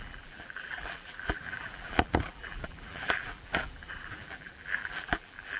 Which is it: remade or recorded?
remade